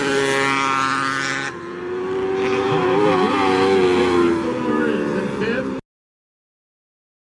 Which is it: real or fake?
real